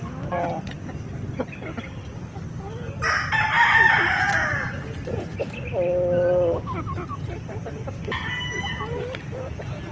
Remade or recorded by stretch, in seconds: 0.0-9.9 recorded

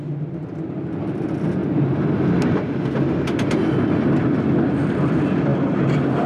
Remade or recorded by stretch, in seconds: 0.0-1.6 remade; 1.6-4.9 recorded; 4.9-6.3 remade

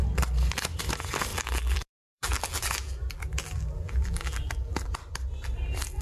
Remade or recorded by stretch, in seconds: 0.0-1.3 recorded; 1.3-4.9 remade; 4.9-6.0 recorded

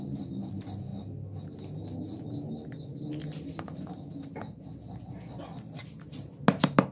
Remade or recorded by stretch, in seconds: 0.0-6.9 recorded